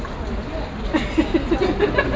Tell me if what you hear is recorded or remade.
recorded